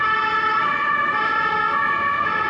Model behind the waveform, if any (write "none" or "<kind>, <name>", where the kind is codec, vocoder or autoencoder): none